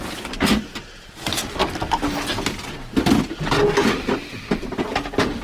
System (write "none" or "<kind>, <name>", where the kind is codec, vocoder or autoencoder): none